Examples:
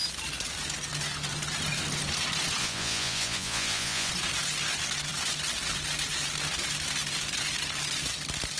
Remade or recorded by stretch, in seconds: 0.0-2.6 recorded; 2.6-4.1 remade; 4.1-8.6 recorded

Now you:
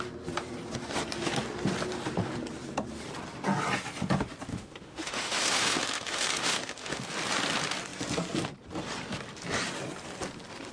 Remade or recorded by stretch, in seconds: 0.0-4.5 recorded; 4.5-7.0 remade; 7.0-10.7 recorded

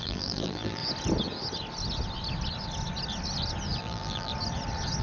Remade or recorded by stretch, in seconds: 0.0-0.8 remade; 0.8-3.8 recorded; 3.8-4.3 remade; 4.3-5.0 recorded

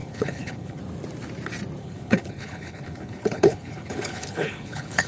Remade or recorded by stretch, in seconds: 0.0-0.8 remade; 0.8-1.8 recorded; 1.8-5.1 remade